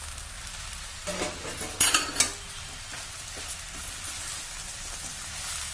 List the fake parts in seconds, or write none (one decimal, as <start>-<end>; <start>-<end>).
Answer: none